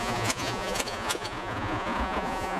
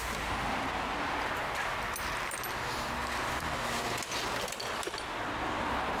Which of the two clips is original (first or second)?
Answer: second